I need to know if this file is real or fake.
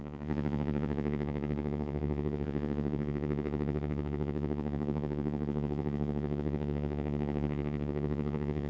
fake